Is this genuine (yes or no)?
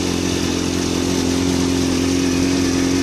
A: yes